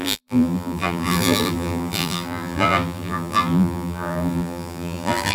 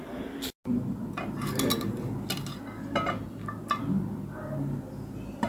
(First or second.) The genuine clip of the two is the second